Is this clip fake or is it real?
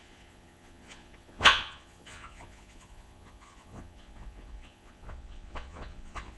fake